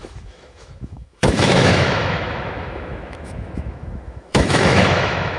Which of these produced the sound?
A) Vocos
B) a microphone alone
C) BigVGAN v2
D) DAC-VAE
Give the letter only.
D